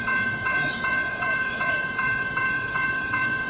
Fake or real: fake